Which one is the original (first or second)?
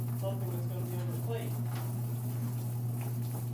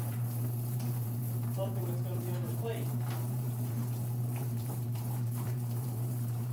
first